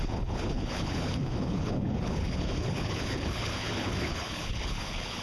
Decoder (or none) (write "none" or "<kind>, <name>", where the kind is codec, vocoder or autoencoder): codec, HILCodec